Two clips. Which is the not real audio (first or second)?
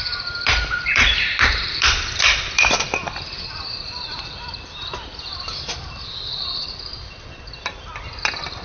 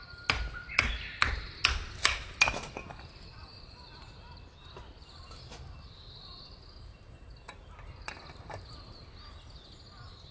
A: first